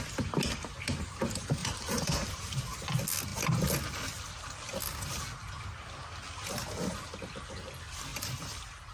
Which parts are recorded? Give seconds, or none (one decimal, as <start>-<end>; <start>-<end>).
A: 0.0-1.6; 2.4-8.1